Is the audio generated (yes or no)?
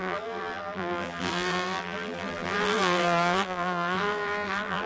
yes